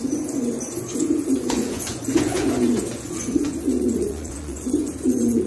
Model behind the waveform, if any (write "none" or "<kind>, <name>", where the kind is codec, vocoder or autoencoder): vocoder, Vocos